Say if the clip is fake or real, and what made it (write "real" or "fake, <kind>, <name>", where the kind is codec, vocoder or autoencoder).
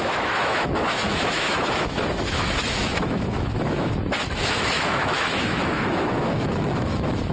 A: fake, autoencoder, DAC-VAE